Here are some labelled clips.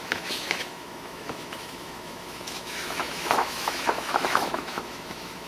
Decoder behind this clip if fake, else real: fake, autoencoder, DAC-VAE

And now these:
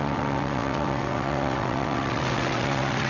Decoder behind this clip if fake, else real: fake, vocoder, WaveNeXt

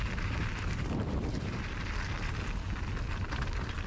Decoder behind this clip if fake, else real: real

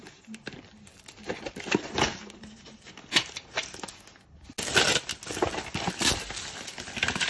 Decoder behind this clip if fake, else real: real